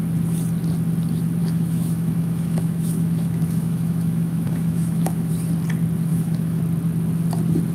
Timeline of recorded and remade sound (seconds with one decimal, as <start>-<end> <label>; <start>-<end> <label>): 0.0-1.4 recorded; 1.4-5.3 remade; 5.3-6.1 recorded; 6.1-6.6 remade; 6.6-7.7 recorded